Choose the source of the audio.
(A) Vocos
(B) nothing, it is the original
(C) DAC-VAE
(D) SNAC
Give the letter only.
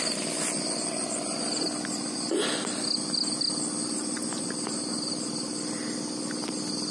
B